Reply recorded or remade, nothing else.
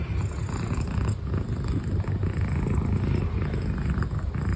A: recorded